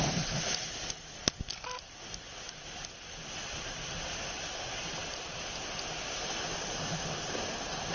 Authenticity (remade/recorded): recorded